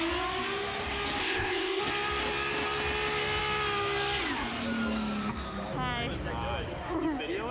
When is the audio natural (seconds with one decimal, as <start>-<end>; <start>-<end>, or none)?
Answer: 0.0-1.2; 1.8-7.5